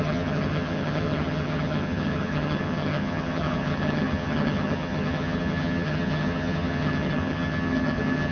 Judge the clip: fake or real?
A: fake